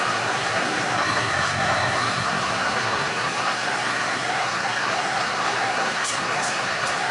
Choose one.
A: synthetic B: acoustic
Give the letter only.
A